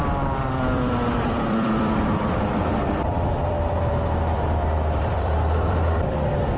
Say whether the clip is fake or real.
fake